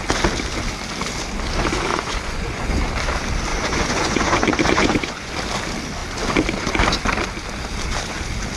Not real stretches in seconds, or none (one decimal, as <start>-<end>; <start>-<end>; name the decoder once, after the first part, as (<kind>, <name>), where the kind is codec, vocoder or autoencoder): 1.9-2.8 (vocoder, Vocos); 3.5-5.3